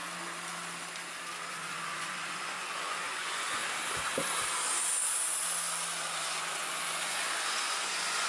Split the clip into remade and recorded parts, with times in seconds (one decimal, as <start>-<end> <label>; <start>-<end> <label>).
0.0-1.5 recorded; 1.5-3.6 remade; 3.6-6.0 recorded; 6.0-8.3 remade